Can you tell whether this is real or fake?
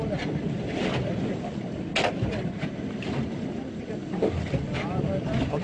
real